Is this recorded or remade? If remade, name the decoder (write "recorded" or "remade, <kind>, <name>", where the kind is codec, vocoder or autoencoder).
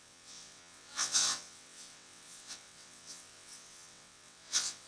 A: remade, vocoder, WaveNeXt